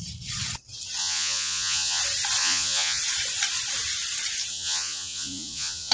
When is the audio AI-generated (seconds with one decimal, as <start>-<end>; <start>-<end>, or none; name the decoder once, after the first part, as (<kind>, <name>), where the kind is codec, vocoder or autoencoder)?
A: 1.0-2.0 (vocoder, Vocos); 2.4-3.0; 4.5-5.9